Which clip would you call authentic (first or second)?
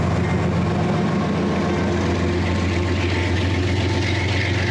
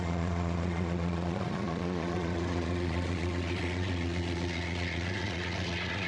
first